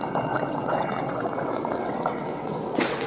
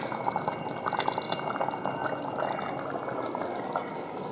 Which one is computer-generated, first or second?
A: first